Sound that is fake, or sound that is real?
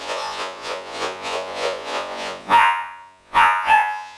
fake